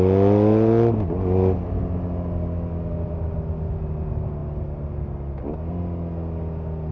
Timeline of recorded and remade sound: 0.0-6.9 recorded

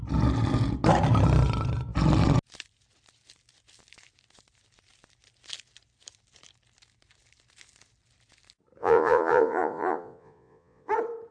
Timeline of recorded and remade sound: 0.0-8.8 recorded; 8.8-10.9 remade; 10.9-11.3 recorded

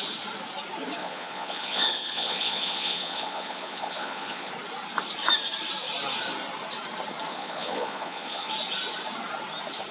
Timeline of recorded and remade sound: 0.0-1.0 recorded; 1.0-4.5 remade; 4.5-7.3 recorded; 7.3-8.5 remade; 8.5-9.9 recorded

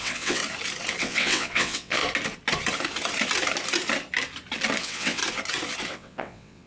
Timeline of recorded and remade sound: 0.0-0.4 remade; 0.4-1.0 recorded; 1.0-2.0 remade; 2.0-4.8 recorded; 4.8-5.2 remade; 5.2-5.9 recorded; 5.9-6.7 remade

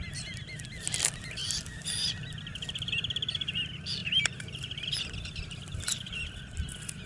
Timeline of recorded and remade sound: 0.0-4.0 recorded; 4.0-6.4 remade; 6.4-7.1 recorded

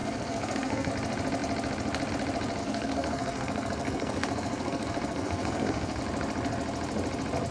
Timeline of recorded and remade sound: 0.0-0.9 remade; 0.9-2.6 recorded; 2.6-6.0 remade; 6.0-7.5 recorded

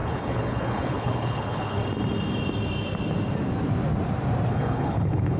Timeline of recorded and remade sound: 0.0-1.8 remade; 1.8-4.5 recorded; 4.5-5.4 remade

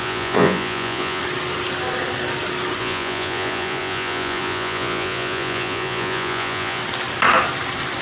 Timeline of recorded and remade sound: 0.0-1.2 remade; 1.2-2.8 recorded; 2.8-6.8 remade; 6.8-8.0 recorded